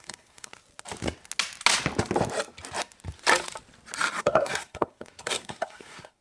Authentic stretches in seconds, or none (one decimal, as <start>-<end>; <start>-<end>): 0.5-4.2